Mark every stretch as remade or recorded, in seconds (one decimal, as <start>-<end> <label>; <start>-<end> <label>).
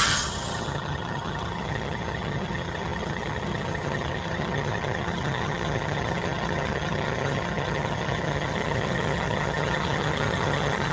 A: 0.0-10.9 remade